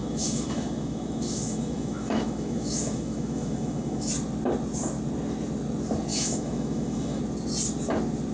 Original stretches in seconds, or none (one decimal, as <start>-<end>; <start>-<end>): 4.1-6.1; 7.2-8.3

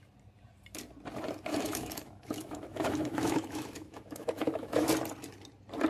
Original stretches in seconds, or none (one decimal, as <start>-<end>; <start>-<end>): 0.0-1.5; 4.9-5.9